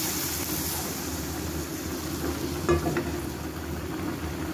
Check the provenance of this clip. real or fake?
real